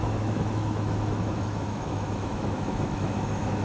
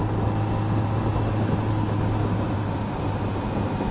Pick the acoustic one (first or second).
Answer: second